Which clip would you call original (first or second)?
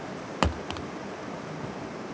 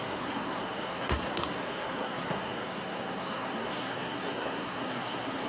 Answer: first